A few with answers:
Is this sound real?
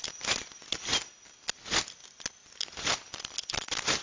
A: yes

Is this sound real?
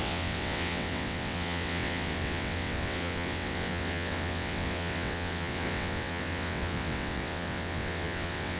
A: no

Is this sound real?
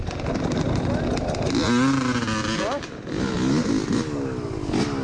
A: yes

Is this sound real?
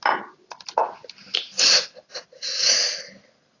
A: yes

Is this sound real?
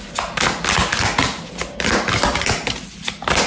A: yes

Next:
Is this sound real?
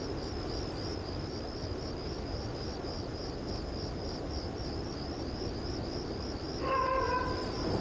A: yes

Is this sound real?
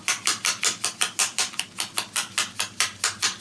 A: yes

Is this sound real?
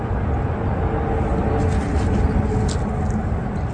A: yes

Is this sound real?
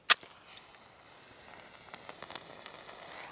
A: yes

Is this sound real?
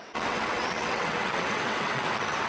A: no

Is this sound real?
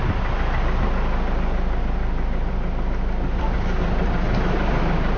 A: yes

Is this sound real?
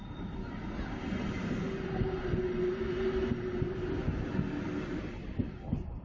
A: yes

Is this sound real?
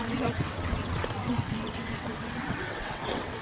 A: no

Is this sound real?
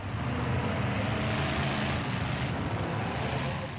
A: yes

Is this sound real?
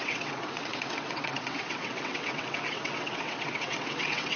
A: no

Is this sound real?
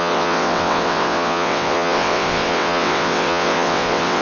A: no